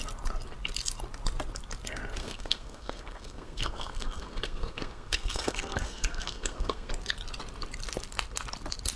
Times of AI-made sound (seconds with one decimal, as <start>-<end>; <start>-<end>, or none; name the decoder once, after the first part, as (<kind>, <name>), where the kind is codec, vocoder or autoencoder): 2.2-6.9 (codec, SNAC)